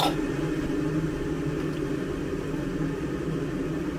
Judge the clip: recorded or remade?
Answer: recorded